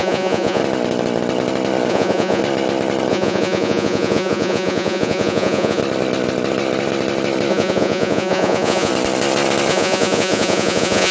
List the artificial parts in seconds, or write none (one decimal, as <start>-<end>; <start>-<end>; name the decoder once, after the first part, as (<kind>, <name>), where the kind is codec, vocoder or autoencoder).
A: 0.0-0.6 (vocoder, Vocos); 1.9-2.4; 3.1-5.8; 7.5-8.9; 9.7-11.1